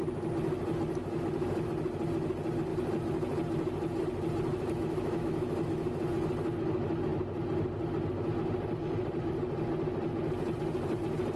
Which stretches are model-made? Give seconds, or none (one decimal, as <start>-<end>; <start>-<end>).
1.0-1.7; 4.5-6.0